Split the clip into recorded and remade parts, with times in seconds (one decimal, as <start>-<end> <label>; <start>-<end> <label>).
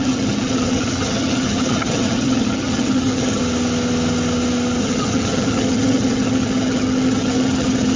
0.0-3.4 remade; 3.4-4.8 recorded; 4.8-8.0 remade